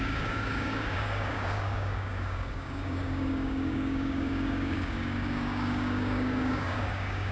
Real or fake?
fake